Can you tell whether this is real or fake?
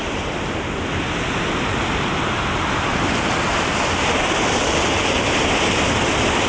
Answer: real